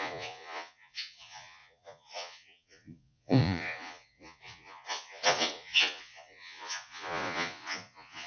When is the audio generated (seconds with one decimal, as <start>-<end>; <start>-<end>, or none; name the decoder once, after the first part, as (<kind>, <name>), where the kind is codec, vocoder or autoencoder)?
0.0-8.3 (vocoder, Vocos)